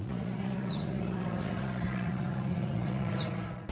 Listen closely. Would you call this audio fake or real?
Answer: fake